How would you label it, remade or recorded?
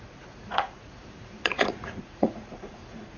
remade